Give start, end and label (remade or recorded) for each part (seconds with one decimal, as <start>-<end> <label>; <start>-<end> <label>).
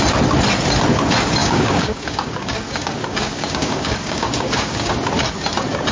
0.0-1.4 recorded; 1.4-4.9 remade; 4.9-5.9 recorded